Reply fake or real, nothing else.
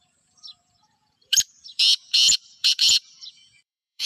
fake